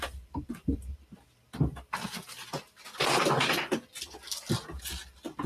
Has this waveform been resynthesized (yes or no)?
no